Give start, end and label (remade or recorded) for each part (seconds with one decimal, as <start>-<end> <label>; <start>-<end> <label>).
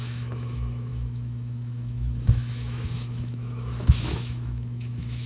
0.0-5.3 remade